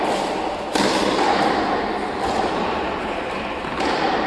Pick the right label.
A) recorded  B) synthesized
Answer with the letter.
A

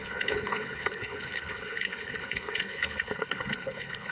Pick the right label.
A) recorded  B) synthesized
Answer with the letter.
B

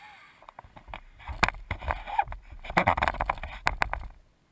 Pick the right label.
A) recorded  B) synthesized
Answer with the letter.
A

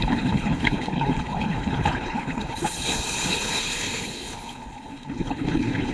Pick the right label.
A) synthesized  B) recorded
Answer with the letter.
A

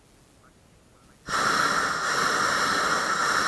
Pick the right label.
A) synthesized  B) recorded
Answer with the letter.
B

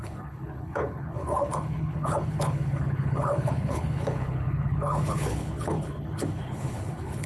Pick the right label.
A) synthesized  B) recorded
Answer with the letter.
A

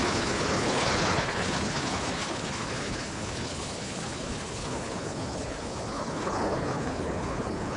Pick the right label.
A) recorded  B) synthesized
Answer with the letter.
B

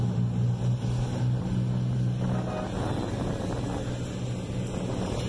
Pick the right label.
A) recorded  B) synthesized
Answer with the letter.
A